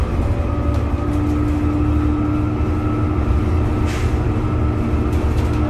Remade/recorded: recorded